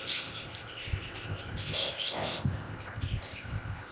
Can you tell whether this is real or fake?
fake